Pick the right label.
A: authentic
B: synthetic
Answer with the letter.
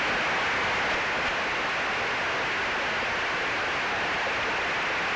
A